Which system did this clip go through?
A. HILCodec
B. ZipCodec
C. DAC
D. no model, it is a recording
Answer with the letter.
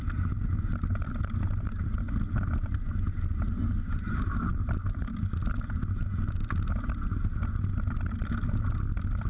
D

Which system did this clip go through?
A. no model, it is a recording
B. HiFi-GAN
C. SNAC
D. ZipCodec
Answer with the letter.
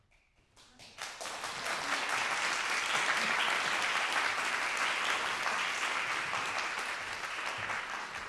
A